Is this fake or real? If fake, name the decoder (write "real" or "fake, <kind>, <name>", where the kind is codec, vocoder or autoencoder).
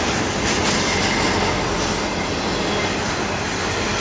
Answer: real